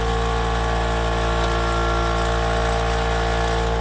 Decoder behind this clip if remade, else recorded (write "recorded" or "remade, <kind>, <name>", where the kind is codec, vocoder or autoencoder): recorded